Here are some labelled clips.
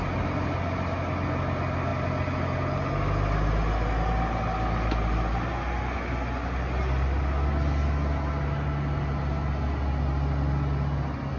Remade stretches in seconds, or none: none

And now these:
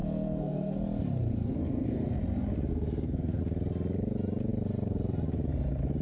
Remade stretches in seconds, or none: 0.0-0.8; 1.4-2.2; 2.7-3.4

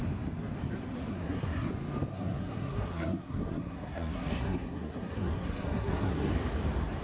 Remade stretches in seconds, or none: 1.1-1.7; 2.1-6.3

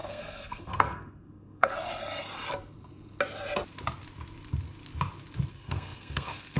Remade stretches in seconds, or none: 0.0-1.7; 5.5-6.6

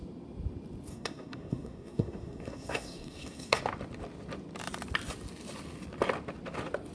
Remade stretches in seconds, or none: 0.9-3.6